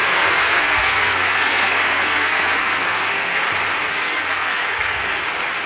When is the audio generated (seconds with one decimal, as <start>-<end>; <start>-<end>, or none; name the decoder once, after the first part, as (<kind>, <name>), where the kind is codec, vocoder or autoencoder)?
0.0-3.4 (codec, SNAC); 3.8-5.2